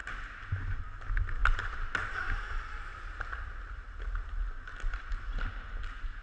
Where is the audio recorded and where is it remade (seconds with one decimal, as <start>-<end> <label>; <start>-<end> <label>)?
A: 0.0-6.2 recorded